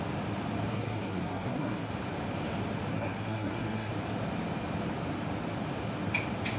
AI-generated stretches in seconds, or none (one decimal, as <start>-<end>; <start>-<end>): 0.7-1.9; 2.9-3.9